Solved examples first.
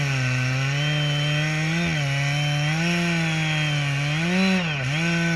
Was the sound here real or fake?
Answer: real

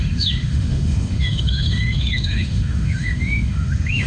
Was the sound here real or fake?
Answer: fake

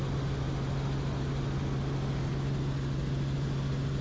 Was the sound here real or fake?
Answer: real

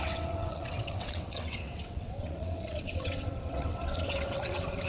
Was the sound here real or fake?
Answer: fake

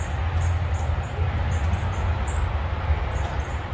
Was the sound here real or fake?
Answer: real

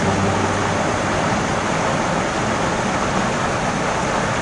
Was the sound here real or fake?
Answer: real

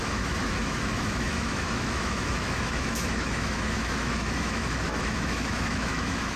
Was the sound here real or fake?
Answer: fake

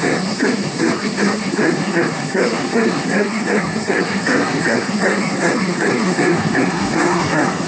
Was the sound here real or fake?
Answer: fake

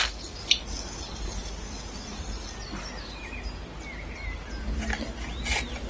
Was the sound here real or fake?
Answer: real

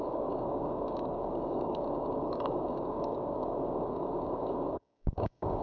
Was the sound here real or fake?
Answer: fake